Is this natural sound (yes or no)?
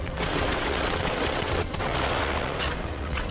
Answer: no